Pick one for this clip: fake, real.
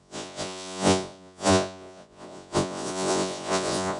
fake